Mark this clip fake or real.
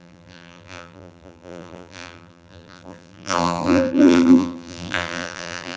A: fake